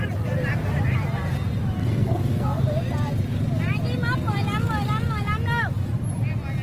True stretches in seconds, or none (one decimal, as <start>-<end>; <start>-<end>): 0.0-1.8; 2.6-6.6